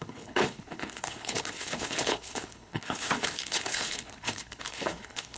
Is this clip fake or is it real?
fake